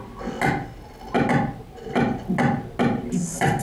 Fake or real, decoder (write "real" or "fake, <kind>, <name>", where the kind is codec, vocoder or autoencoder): real